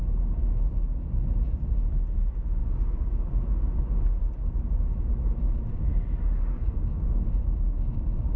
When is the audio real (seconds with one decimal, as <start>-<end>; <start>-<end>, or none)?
0.0-8.4